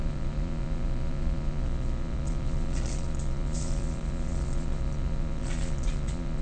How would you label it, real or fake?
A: fake